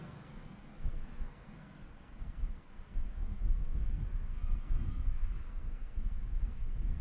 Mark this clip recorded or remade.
remade